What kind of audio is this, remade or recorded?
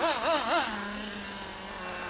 recorded